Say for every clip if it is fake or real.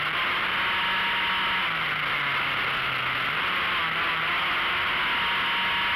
real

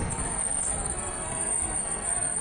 fake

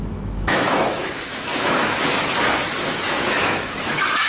fake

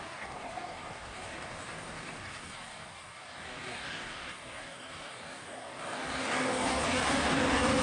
fake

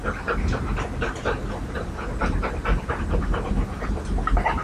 real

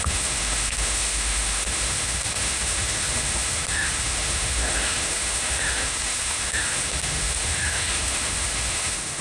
fake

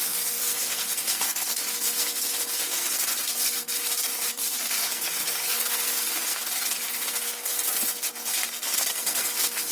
fake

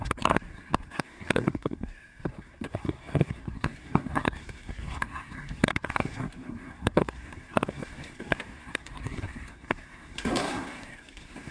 fake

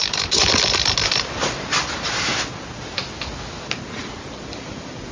real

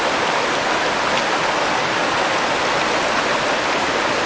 real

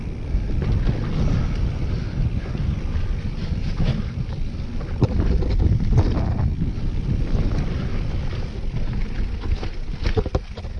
real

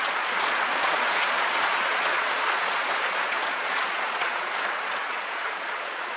fake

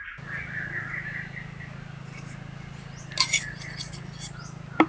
real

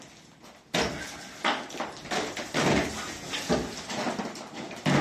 real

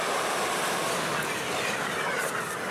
real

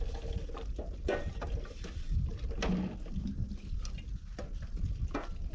real